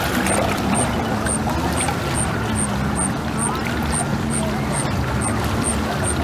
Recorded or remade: recorded